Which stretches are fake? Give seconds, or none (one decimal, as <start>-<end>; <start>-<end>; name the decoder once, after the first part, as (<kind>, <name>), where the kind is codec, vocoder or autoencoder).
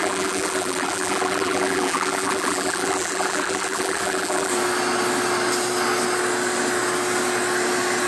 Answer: 0.0-4.5 (vocoder, BigVGAN v2)